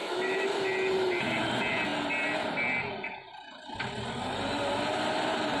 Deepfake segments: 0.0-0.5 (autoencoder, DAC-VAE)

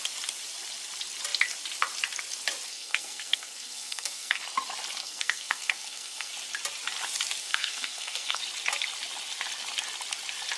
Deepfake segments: 2.7-4.4 (codec, SNAC); 5.0-6.3; 7.4-8.4

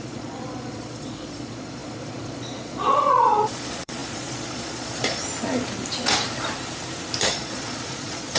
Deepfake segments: 0.0-5.2 (vocoder, Vocos); 7.3-8.4

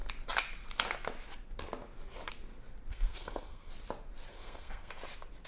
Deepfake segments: 2.9-3.7 (codec, SNAC); 4.3-4.9

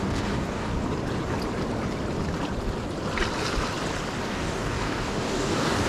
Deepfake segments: 0.0-0.7 (codec, DAC); 4.2-5.9

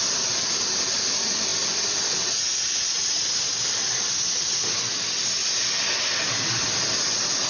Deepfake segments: none

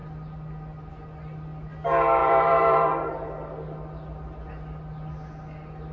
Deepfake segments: 2.2-2.9 (vocoder, BigVGAN v2)

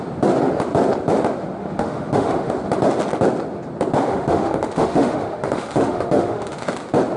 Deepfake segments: 1.6-2.5 (autoencoder, DAC-VAE); 4.1-6.7